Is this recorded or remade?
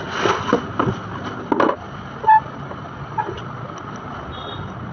recorded